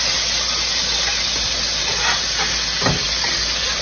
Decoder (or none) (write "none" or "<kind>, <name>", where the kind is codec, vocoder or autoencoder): none